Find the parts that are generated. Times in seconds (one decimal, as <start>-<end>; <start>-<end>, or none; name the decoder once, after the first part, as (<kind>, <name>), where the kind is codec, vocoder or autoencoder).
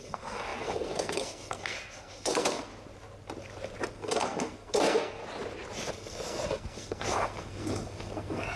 0.0-2.7 (codec, SNAC); 3.9-5.2; 5.9-8.6